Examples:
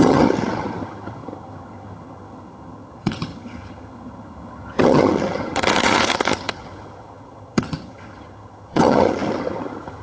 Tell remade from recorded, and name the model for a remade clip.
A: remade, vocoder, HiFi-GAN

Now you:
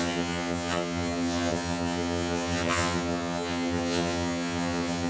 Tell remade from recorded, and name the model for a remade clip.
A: remade, vocoder, HiFi-GAN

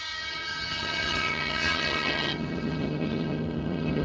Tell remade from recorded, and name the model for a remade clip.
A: remade, vocoder, HiFi-GAN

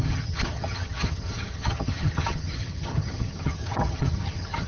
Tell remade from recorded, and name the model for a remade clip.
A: remade, vocoder, HiFi-GAN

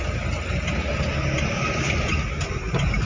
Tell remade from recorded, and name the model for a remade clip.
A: recorded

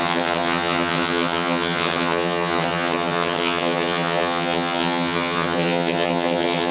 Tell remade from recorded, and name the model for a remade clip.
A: remade, vocoder, HiFi-GAN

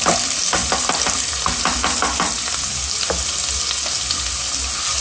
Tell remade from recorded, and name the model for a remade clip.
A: recorded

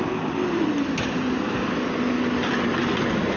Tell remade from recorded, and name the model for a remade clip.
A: recorded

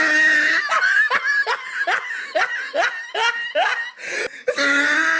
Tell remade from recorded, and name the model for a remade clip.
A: recorded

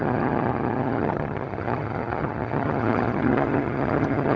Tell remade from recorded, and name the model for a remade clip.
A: remade, vocoder, HiFi-GAN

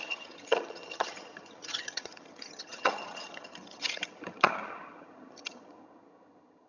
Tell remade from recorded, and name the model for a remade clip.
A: remade, vocoder, HiFi-GAN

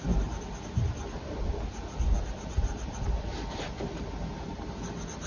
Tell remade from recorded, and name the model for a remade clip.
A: recorded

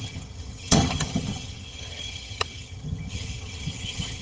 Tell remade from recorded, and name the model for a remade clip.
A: remade, vocoder, HiFi-GAN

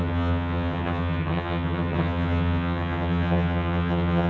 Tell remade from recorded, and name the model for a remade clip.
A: remade, vocoder, HiFi-GAN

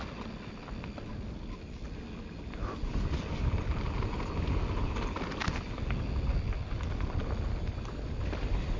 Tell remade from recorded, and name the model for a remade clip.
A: recorded